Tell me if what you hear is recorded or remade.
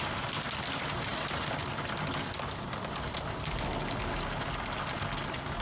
recorded